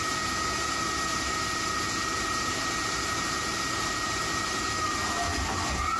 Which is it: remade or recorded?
remade